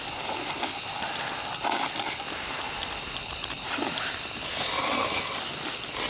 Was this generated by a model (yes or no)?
no